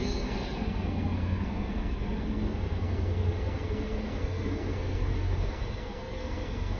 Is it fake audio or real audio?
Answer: fake